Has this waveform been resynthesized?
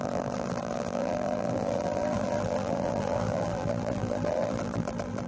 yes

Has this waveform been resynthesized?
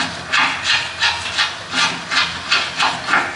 no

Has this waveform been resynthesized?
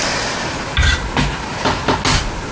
no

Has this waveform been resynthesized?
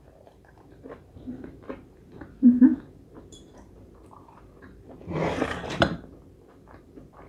yes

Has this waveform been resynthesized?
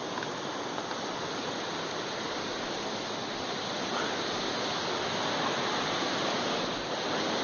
no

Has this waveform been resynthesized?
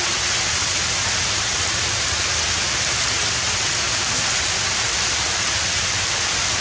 no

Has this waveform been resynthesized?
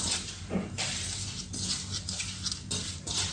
no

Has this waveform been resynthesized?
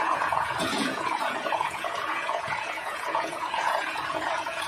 yes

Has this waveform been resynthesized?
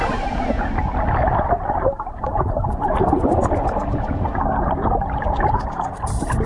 no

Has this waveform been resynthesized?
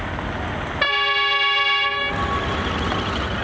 no